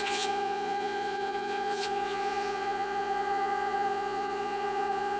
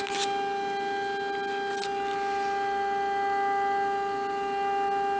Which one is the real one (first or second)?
second